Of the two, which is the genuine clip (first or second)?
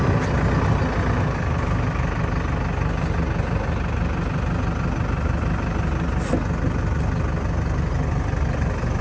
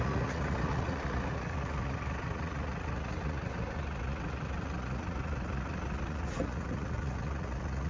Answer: first